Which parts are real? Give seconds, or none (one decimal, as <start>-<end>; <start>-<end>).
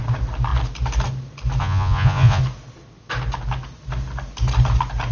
0.0-1.6; 2.4-5.1